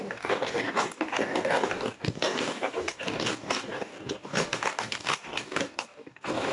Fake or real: fake